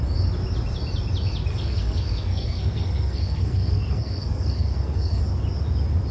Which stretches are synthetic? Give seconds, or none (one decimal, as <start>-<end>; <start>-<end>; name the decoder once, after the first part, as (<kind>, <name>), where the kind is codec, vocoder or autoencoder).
1.5-5.2 (codec, SNAC)